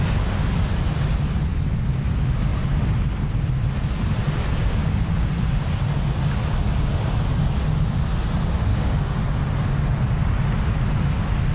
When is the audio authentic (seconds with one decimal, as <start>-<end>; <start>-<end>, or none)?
0.0-4.8; 5.3-8.7; 9.2-11.5